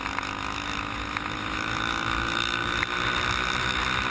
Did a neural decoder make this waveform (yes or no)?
no